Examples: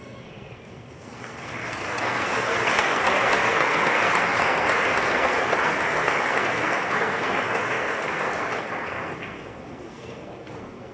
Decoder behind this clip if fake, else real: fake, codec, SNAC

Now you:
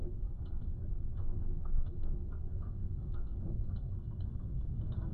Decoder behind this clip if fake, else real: fake, codec, SNAC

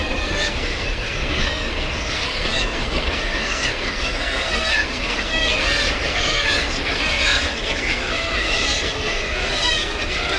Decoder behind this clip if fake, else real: fake, codec, SNAC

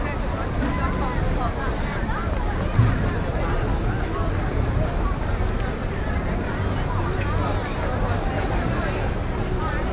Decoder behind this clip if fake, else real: real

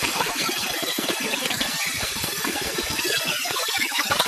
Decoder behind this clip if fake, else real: fake, codec, SNAC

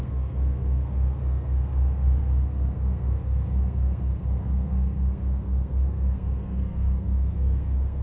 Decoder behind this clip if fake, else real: fake, codec, SNAC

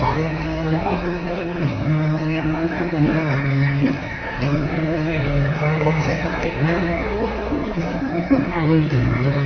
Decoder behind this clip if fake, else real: fake, codec, SNAC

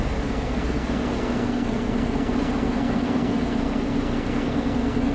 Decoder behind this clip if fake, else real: fake, codec, SNAC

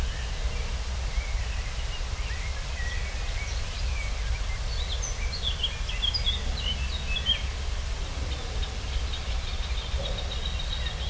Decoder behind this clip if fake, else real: real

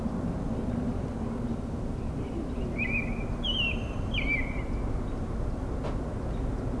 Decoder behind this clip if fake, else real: real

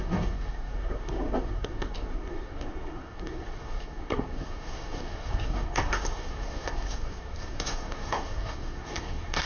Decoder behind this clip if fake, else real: fake, codec, SNAC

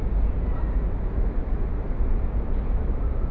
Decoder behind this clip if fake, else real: real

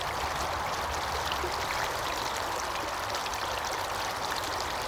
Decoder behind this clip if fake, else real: real